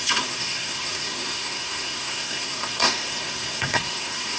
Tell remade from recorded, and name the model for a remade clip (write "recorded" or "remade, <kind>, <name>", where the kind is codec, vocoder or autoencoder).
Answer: remade, codec, SNAC